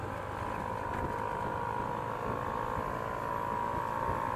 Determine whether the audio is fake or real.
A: real